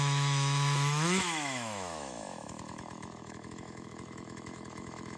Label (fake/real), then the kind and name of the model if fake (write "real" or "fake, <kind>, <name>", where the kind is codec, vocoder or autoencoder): fake, autoencoder, DAC-VAE